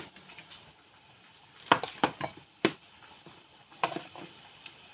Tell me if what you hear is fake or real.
real